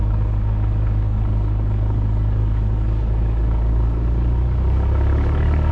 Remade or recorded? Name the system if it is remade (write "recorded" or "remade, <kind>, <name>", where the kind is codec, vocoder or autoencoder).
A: remade, codec, DAC